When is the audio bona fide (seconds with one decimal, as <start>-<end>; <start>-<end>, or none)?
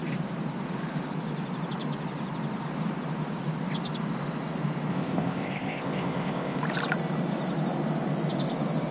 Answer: 0.0-4.9; 6.6-8.9